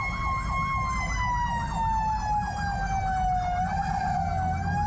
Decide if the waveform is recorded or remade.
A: recorded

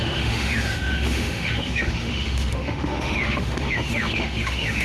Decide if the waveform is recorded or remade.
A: remade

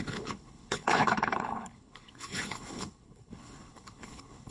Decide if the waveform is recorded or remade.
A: remade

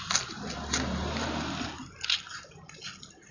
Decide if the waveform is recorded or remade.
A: recorded